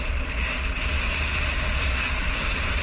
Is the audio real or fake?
real